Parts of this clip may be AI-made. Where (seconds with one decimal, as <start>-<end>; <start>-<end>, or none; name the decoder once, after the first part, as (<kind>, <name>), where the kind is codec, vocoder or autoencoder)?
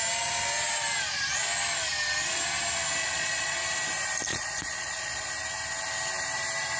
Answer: 3.0-3.6 (vocoder, Vocos); 4.3-5.3